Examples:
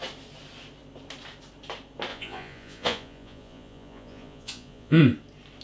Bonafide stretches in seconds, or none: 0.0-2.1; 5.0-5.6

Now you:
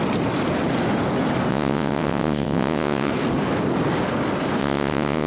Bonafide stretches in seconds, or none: 0.0-1.5; 3.1-4.6